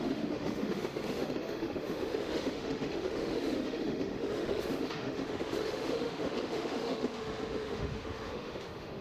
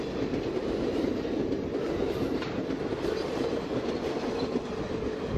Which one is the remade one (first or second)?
first